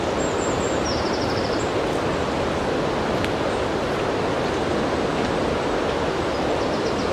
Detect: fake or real real